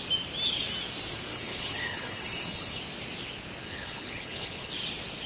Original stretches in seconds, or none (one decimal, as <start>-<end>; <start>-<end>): 0.0-1.3; 2.8-3.6; 4.7-5.3